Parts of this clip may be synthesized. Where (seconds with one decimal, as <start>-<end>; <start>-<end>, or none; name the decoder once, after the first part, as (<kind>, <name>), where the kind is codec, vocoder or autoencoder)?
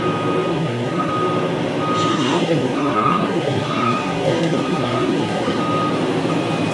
0.5-1.1 (codec, SNAC); 2.1-5.6